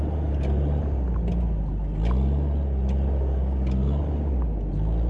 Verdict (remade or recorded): recorded